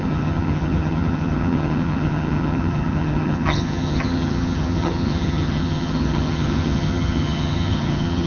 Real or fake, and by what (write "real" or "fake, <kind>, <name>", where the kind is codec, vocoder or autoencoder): fake, vocoder, HiFi-GAN